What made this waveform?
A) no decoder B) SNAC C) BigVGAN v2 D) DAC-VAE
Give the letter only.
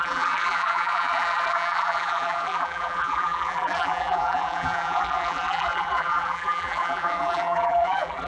C